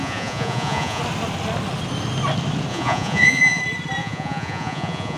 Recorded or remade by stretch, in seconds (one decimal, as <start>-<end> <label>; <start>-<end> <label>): 0.0-1.0 remade; 1.0-2.7 recorded; 2.7-3.6 remade; 3.6-4.0 recorded; 4.0-5.2 remade